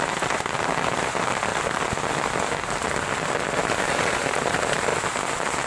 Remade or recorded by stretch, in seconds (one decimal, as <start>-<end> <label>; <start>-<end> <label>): 0.0-1.5 remade; 1.5-3.5 recorded; 3.5-4.9 remade; 4.9-5.7 recorded